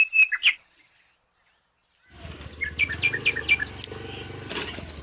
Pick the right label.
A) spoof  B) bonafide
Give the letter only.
B